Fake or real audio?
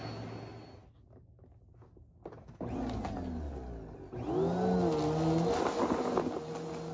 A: real